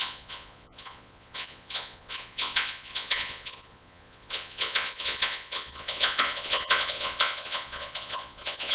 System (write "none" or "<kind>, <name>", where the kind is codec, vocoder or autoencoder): vocoder, Vocos